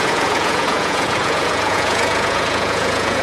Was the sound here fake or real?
fake